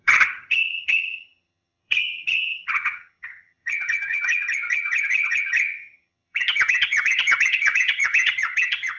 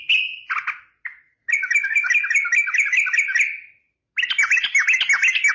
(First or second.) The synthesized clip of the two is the first